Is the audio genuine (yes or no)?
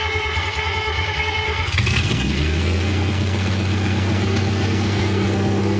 no